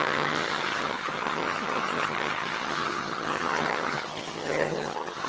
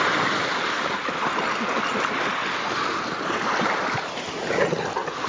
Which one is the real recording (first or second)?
second